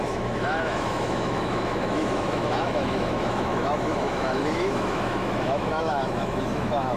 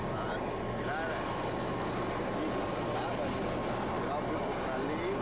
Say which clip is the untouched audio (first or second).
second